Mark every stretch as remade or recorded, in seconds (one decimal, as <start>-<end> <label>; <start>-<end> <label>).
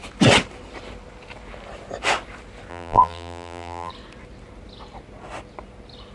0.0-2.7 recorded; 2.7-3.9 remade; 3.9-6.1 recorded